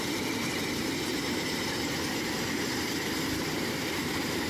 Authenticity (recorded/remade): remade